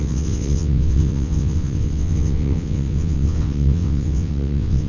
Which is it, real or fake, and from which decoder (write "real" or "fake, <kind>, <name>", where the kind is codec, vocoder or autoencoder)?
fake, vocoder, WaveNeXt